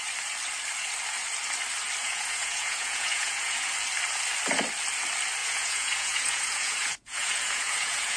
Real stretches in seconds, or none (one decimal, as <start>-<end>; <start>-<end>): 0.0-2.0; 3.7-5.4